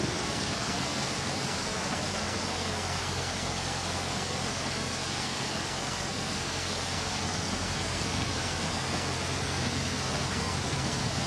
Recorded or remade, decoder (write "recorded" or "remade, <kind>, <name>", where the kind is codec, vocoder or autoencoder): remade, codec, SNAC